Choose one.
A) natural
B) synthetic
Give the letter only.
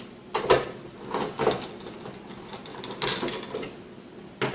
A